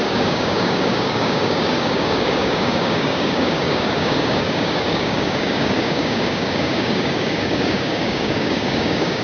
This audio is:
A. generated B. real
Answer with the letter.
A